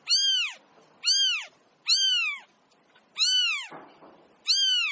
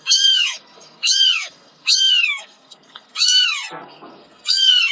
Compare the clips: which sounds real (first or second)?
first